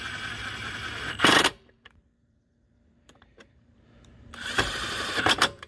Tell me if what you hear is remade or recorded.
remade